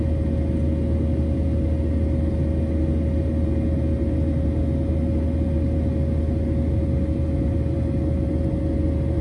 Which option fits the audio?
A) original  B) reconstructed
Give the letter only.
A